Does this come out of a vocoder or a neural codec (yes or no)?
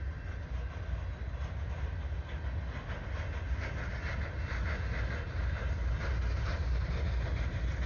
no